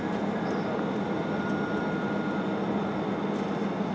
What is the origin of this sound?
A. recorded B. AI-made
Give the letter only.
A